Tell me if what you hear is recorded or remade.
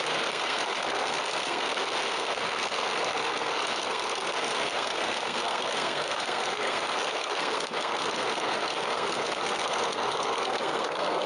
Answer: remade